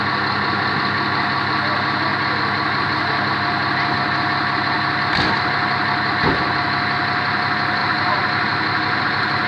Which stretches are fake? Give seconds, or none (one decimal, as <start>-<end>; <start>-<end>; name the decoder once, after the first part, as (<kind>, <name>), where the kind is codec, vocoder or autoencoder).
none